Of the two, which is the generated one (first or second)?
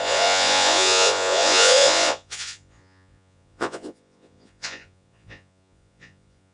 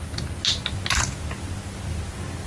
first